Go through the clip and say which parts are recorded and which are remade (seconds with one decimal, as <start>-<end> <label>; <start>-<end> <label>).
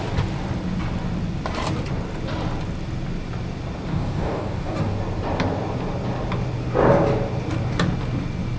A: 0.0-3.9 recorded; 3.9-4.8 remade; 4.8-8.6 recorded